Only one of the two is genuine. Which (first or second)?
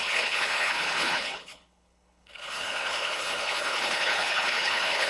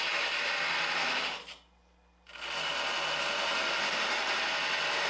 second